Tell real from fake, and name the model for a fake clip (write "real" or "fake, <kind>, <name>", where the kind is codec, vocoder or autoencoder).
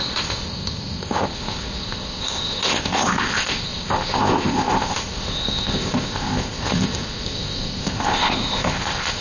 fake, codec, ZipCodec